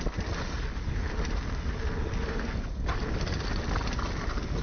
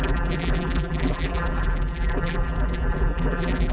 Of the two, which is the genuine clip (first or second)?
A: first